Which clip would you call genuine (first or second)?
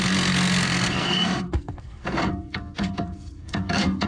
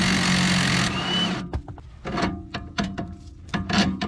second